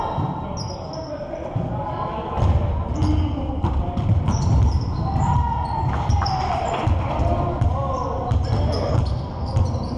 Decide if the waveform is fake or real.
real